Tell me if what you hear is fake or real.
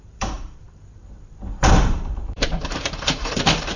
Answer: fake